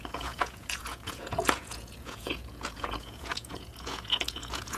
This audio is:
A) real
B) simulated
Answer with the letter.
B